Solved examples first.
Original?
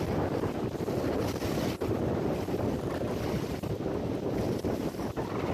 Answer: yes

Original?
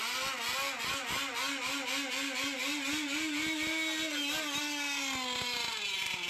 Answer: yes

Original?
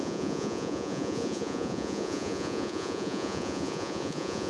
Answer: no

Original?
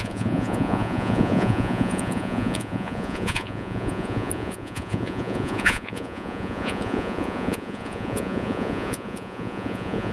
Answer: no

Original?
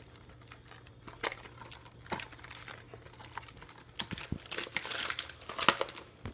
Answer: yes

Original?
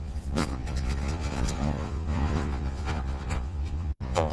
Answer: no